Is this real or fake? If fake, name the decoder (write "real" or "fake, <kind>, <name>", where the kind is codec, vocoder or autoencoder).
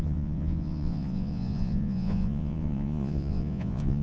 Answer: fake, vocoder, Vocos